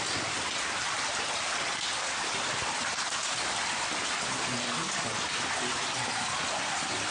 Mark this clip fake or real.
real